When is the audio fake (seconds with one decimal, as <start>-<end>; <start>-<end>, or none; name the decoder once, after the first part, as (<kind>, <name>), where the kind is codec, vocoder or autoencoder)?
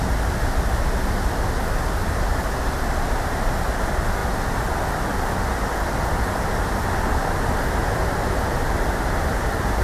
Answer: none